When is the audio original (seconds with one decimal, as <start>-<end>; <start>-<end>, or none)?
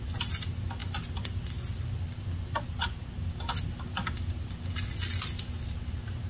0.0-6.3